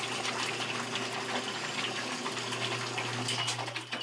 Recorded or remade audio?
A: recorded